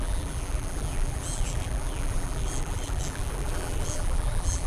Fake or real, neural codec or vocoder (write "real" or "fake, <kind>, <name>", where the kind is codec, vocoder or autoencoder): fake, vocoder, BigVGAN v2